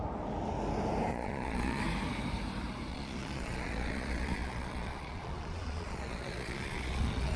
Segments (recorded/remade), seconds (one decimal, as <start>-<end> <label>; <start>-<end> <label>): 0.0-1.1 recorded; 1.1-1.8 remade; 1.8-2.9 recorded; 2.9-7.4 remade